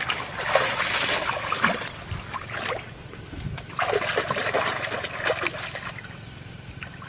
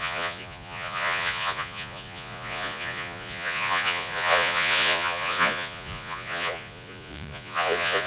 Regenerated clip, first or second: second